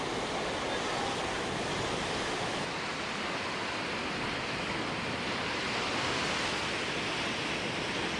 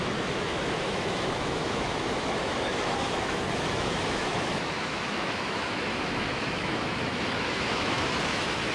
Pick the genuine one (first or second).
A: first